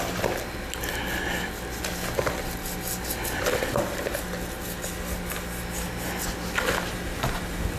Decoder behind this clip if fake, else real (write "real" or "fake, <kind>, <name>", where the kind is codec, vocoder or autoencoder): real